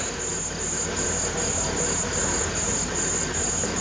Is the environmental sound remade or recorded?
recorded